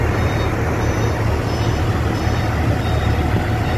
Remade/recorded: recorded